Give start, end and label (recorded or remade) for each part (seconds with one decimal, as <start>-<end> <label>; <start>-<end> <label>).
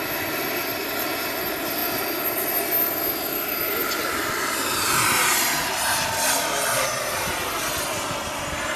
0.0-8.8 recorded